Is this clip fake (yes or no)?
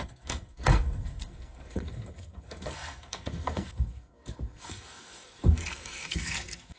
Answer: yes